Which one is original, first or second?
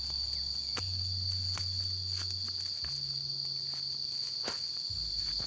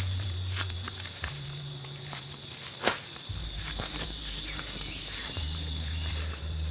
first